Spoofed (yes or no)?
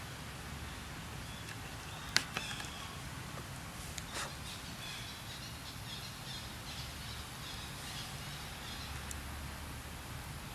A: no